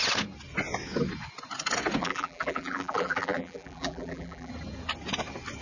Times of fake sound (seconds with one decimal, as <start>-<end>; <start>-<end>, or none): 2.0-4.5